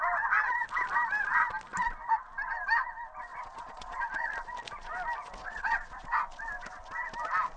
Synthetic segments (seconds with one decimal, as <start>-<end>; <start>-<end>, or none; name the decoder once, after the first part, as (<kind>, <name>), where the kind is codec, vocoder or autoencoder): 3.3-4.0 (vocoder, Vocos); 5.4-6.2